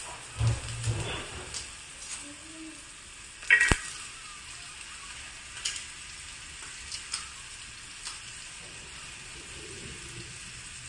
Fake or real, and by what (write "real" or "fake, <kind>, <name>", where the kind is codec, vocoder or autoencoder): real